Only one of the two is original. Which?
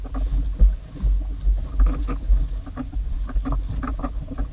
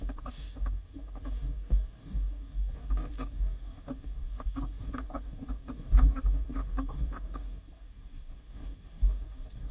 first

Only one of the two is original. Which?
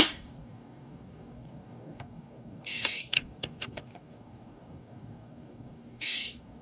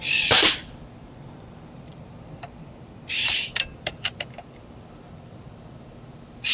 second